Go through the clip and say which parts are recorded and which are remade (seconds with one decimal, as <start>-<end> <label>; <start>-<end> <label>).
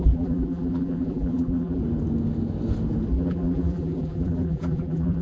0.0-1.8 remade; 1.8-3.1 recorded; 3.1-5.2 remade